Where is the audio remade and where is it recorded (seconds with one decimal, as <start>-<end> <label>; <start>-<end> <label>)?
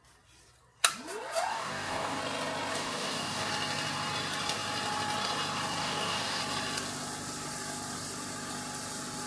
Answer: 0.0-1.5 recorded; 1.5-2.2 remade; 2.2-2.7 recorded; 2.7-3.5 remade; 3.5-5.8 recorded; 5.8-6.4 remade; 6.4-9.3 recorded